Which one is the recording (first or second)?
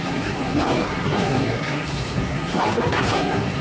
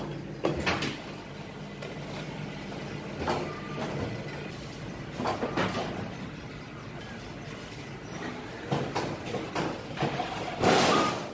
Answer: second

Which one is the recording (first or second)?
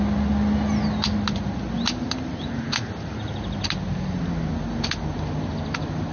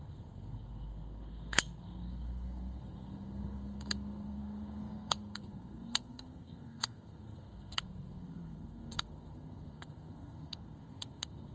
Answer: first